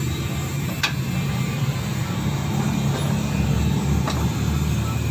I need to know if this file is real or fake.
real